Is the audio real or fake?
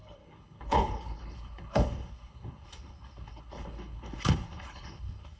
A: fake